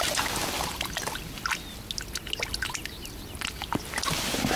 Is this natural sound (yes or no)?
yes